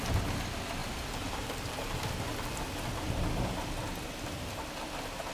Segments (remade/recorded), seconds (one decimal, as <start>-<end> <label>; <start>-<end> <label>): 0.0-0.8 recorded; 0.8-2.1 remade; 2.1-5.3 recorded